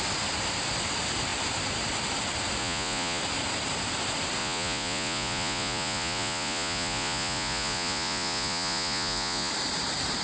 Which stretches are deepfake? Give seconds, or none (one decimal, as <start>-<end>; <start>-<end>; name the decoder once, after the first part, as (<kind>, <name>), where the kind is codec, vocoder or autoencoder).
2.6-3.2 (vocoder, Vocos); 4.4-9.5